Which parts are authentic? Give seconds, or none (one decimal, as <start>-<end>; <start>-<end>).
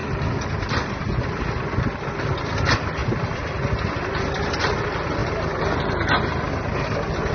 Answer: 0.0-7.3